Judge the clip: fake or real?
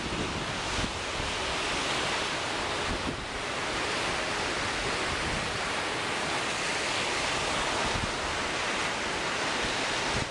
real